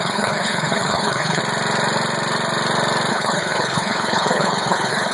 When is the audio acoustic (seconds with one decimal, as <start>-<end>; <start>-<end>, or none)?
1.4-3.1